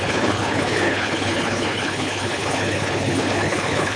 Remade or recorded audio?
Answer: remade